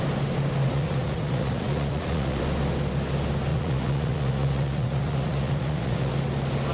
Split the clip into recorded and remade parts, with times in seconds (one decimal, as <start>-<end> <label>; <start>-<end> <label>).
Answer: 0.0-0.6 recorded; 0.6-2.4 remade; 2.4-3.5 recorded; 3.5-6.1 remade; 6.1-6.7 recorded